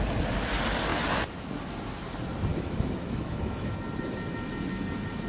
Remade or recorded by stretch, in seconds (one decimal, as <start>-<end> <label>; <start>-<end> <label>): 0.0-2.5 recorded; 2.5-3.7 remade; 3.7-5.3 recorded